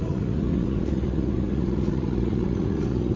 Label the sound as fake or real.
fake